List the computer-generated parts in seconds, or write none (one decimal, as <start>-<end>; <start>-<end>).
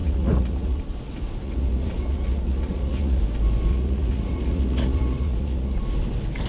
0.0-0.8; 1.4-3.2; 3.7-5.8